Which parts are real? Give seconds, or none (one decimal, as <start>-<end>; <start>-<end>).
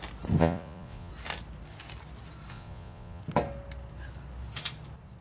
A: 0.0-0.4; 1.1-2.5; 3.2-5.2